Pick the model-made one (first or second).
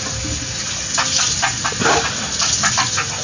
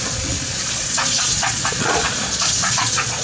second